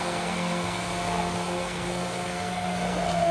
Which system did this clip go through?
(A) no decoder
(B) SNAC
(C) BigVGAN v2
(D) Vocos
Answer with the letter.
B